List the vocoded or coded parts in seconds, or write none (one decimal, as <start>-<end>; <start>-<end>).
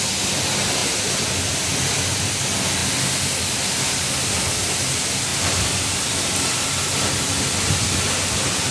none